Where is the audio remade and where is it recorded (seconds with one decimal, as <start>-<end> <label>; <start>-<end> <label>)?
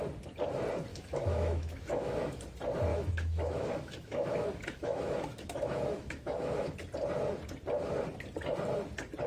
0.0-0.9 recorded; 0.9-2.4 remade; 2.4-2.9 recorded; 2.9-6.7 remade; 6.7-9.3 recorded